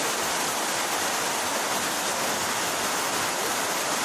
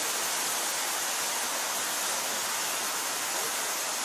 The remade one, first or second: first